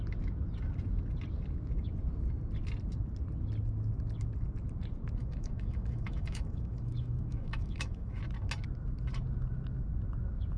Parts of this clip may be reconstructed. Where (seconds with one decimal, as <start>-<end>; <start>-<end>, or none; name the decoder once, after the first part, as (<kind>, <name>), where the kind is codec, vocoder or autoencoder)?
5.2-8.2 (autoencoder, DAC-VAE)